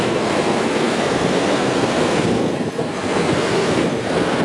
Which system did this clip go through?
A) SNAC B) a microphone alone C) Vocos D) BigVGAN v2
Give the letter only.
A